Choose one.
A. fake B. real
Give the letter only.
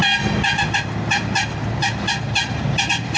B